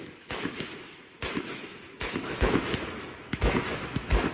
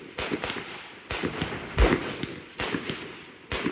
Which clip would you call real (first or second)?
second